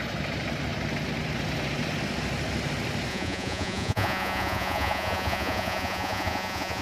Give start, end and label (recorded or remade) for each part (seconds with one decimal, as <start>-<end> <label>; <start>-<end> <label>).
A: 0.0-3.1 recorded; 3.1-6.8 remade